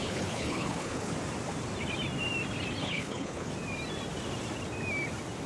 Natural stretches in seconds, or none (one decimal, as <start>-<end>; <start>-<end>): 1.1-2.8; 3.5-5.5